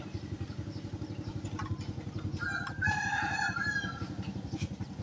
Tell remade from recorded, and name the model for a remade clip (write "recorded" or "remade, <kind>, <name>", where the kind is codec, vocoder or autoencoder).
recorded